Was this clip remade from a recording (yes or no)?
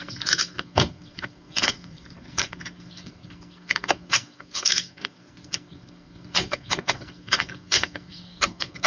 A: yes